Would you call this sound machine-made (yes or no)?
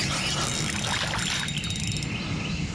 no